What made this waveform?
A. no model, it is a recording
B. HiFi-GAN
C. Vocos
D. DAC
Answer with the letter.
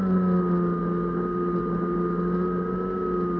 A